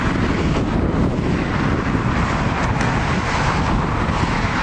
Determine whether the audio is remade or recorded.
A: recorded